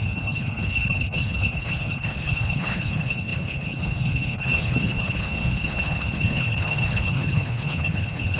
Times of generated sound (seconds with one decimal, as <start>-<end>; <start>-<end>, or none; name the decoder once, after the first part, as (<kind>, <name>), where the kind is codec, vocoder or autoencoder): 0.0-8.4 (codec, HILCodec)